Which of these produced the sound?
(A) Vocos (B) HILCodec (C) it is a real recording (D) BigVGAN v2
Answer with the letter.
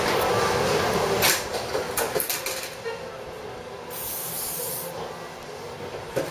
C